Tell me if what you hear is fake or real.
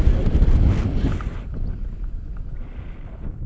real